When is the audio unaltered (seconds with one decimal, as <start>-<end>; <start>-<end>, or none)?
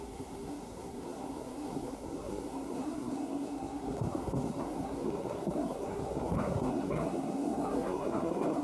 none